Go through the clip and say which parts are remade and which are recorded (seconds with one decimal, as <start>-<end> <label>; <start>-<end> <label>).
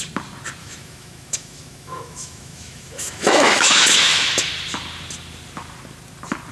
0.0-0.6 recorded; 0.6-4.5 remade; 4.5-6.5 recorded